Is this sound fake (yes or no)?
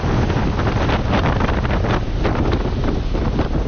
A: no